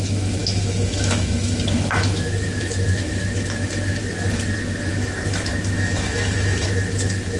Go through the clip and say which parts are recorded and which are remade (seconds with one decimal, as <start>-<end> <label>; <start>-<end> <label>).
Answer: 0.0-4.0 remade; 4.0-4.9 recorded; 4.9-7.4 remade